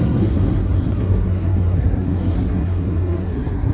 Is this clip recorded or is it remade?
remade